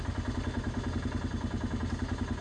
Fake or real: real